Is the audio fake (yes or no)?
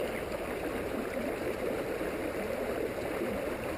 no